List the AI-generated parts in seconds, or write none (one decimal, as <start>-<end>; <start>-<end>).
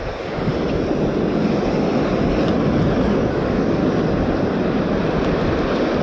0.0-0.5; 3.0-3.8